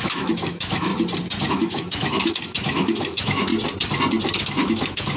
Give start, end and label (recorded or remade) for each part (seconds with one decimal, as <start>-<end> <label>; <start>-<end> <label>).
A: 0.0-0.9 remade; 0.9-1.5 recorded; 1.5-3.5 remade; 3.5-4.4 recorded; 4.4-5.2 remade